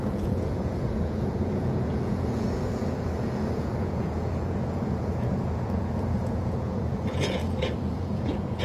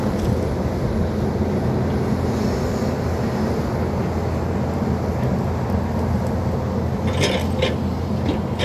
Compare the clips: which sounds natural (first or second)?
second